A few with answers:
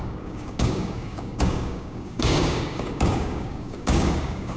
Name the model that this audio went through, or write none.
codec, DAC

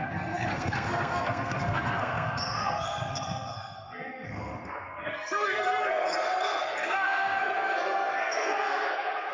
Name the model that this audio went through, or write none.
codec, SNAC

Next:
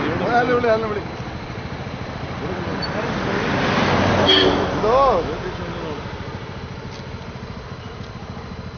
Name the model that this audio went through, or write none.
none